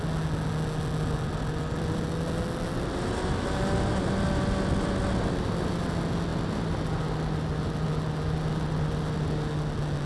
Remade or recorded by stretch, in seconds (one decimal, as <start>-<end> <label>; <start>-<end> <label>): 0.0-10.1 recorded